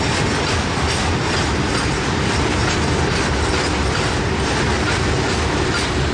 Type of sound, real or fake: real